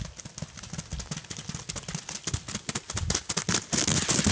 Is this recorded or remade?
recorded